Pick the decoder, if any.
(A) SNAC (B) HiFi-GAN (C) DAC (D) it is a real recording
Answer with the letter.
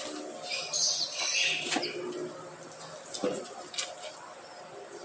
D